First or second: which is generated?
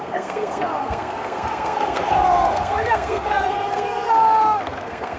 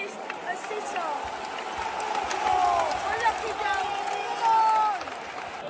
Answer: first